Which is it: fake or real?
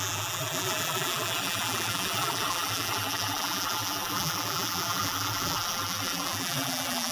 fake